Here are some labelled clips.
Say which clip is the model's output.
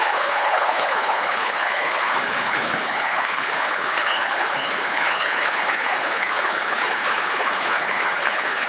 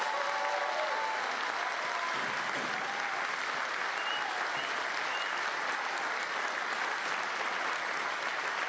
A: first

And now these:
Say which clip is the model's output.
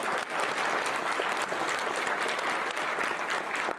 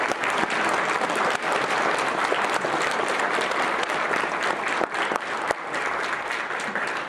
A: second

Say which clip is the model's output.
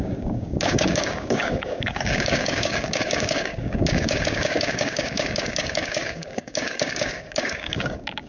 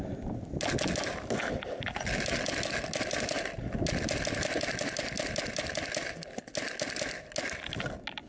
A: first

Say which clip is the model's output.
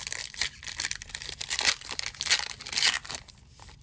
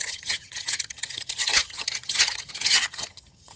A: second